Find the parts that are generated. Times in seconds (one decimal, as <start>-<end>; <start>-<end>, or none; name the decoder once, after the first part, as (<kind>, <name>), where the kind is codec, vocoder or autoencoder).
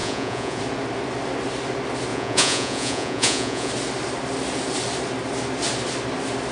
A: 0.0-0.6 (vocoder, Vocos); 2.1-3.7